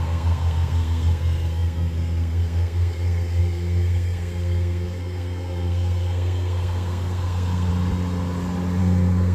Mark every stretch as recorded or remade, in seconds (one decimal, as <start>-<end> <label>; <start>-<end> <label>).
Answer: 0.0-7.7 remade; 7.7-8.8 recorded; 8.8-9.3 remade